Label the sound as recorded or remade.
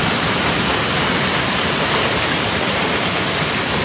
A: remade